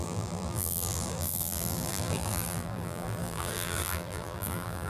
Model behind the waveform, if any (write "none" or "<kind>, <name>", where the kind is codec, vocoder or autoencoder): vocoder, BigVGAN v2